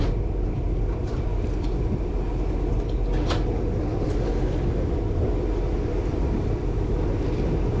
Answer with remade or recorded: recorded